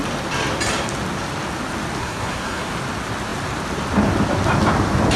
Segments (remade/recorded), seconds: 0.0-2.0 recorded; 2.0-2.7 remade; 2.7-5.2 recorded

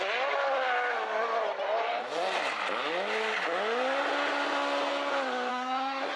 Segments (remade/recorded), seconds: 0.0-5.5 recorded; 5.5-6.2 remade